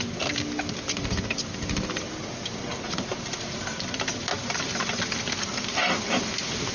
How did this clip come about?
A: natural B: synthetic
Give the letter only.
A